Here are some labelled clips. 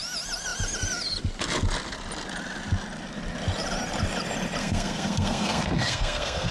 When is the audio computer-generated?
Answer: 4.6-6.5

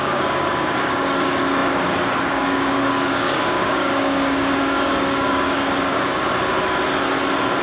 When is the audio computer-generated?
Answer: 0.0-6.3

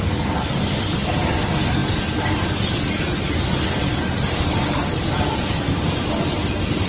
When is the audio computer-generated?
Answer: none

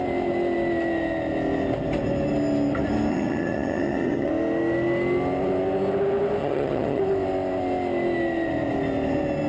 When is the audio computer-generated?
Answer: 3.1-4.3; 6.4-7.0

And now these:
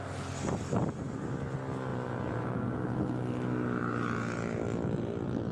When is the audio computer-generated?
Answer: 1.9-2.8; 3.8-4.6

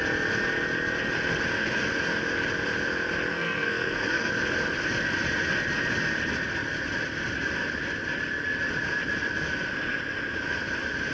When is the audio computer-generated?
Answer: 3.3-4.3

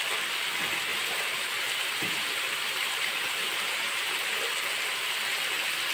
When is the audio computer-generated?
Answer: 0.9-4.4

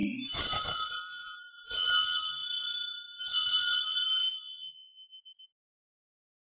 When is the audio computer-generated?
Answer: 0.0-1.7; 2.4-4.3